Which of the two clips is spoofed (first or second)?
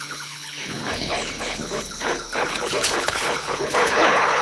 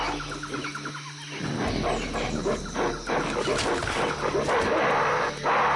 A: first